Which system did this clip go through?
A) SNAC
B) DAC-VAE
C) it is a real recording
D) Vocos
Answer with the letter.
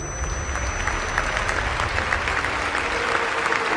C